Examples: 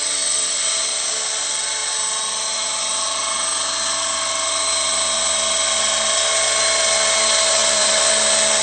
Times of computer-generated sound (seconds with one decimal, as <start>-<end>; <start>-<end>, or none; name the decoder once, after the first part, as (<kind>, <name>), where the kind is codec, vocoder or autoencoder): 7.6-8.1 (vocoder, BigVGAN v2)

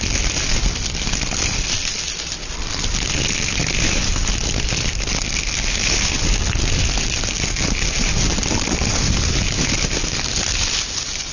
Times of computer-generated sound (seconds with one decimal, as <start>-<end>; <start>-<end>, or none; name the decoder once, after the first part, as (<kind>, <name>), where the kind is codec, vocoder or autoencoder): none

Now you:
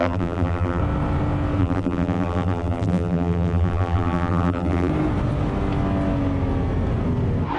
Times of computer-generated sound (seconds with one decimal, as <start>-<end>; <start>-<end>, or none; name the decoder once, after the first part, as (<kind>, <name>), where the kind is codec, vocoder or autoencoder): 0.0-0.8 (vocoder, BigVGAN v2); 1.6-4.9